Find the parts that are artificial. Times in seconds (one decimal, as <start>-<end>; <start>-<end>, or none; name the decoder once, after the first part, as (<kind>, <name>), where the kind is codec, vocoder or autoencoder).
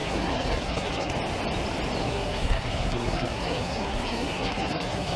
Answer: 0.0-1.1 (codec, SNAC); 2.0-5.2